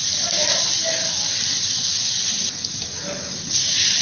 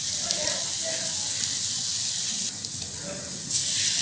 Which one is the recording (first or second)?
second